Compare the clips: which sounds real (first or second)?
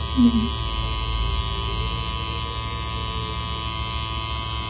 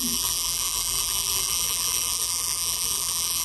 first